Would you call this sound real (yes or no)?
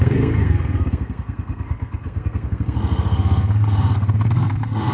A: no